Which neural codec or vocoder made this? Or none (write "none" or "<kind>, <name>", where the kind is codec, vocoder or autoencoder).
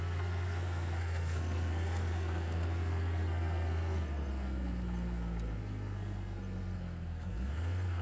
codec, SNAC